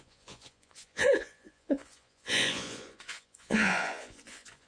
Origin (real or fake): fake